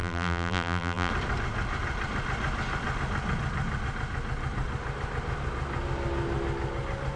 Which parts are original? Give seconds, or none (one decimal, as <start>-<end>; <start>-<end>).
1.1-7.2

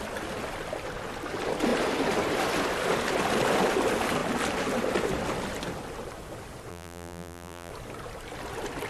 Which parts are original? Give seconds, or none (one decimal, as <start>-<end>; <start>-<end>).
0.0-6.7; 7.7-8.9

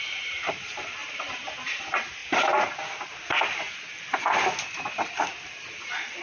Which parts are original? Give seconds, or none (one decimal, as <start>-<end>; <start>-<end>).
2.2-6.2

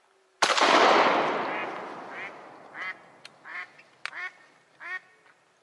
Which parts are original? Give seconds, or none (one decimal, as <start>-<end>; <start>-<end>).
0.0-5.6